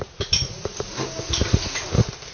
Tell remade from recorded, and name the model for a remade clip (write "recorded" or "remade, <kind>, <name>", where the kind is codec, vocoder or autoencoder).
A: recorded